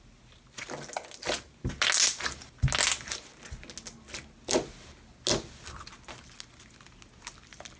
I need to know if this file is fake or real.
real